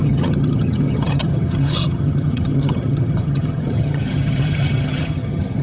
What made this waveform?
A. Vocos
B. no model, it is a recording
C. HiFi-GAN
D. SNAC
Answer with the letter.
C